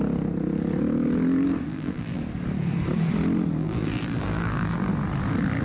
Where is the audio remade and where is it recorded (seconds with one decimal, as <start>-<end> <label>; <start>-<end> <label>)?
0.0-1.7 recorded; 1.7-2.2 remade; 2.2-3.6 recorded; 3.6-4.9 remade; 4.9-5.6 recorded